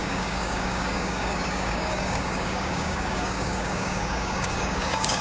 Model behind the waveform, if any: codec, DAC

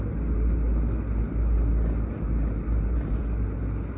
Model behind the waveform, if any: none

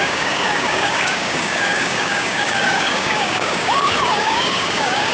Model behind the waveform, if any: codec, DAC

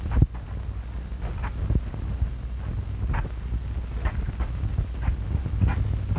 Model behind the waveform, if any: none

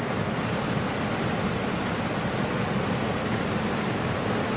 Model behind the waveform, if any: none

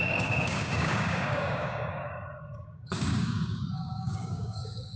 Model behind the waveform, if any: codec, DAC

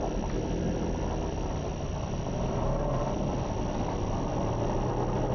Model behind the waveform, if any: none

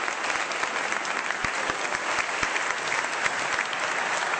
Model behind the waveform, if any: none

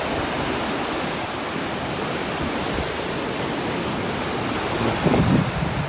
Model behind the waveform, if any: none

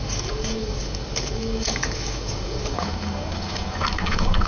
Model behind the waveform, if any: codec, DAC